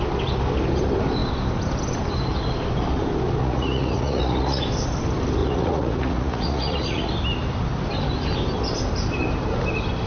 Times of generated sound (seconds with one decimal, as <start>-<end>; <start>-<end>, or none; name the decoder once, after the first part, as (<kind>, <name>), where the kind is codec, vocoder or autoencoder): 3.4-4.6 (vocoder, Vocos); 5.4-7.1